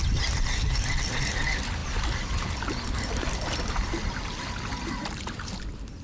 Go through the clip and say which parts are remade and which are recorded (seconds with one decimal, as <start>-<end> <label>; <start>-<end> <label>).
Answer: 0.0-6.0 recorded